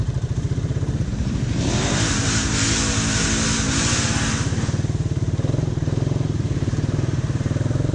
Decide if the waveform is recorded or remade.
remade